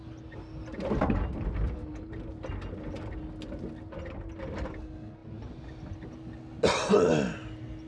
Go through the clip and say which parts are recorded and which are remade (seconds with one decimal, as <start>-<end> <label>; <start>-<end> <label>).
0.0-7.9 recorded

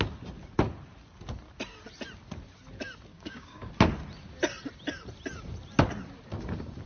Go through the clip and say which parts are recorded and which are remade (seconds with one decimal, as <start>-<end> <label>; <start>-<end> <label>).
0.0-3.1 recorded; 3.1-3.7 remade; 3.7-6.9 recorded

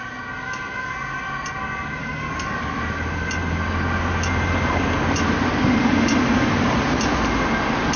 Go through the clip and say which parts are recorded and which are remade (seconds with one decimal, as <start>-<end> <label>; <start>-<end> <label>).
0.0-2.0 recorded; 2.0-2.8 remade; 2.8-8.0 recorded

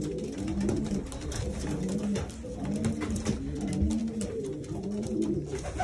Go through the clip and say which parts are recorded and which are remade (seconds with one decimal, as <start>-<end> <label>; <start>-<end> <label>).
0.0-5.8 recorded

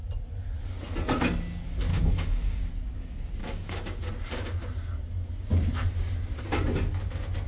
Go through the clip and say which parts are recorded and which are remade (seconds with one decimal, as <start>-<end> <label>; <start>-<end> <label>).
0.0-1.9 recorded; 1.9-2.6 remade; 2.6-3.4 recorded; 3.4-4.1 remade; 4.1-7.5 recorded

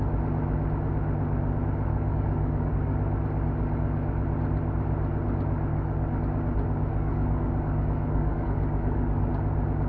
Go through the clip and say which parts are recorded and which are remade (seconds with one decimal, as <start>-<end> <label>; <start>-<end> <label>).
0.0-1.9 recorded; 1.9-2.7 remade; 2.7-5.7 recorded; 5.7-6.2 remade; 6.2-6.9 recorded; 6.9-9.3 remade; 9.3-9.9 recorded

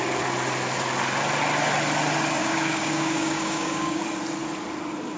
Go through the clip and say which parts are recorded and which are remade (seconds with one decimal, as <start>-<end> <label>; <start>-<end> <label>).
0.0-2.4 recorded; 2.4-4.0 remade; 4.0-5.2 recorded